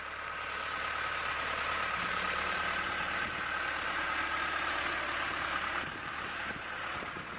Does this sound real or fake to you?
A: fake